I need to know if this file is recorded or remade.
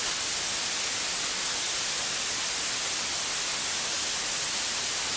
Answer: recorded